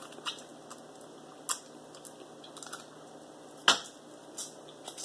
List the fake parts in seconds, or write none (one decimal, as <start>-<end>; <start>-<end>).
none